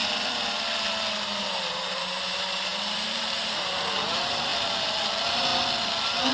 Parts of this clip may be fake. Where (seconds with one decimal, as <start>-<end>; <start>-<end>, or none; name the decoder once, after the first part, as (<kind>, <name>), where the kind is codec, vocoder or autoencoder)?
1.4-4.5 (vocoder, BigVGAN v2); 5.1-5.5